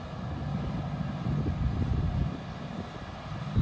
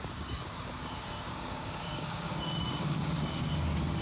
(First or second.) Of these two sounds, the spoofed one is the second